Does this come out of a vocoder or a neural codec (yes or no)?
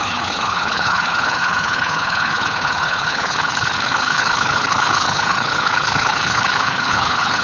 yes